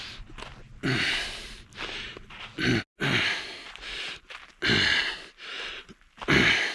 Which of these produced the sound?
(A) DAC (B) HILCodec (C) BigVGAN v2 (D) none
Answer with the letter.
D